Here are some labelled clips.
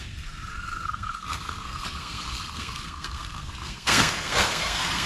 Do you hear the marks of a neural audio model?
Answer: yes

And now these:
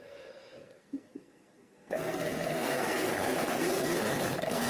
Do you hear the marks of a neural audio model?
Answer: yes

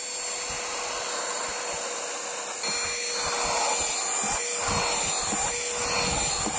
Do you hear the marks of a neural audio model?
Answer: no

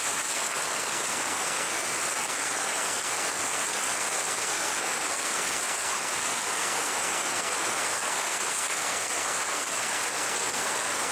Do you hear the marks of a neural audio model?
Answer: yes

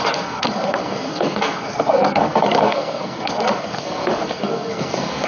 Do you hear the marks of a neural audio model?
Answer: yes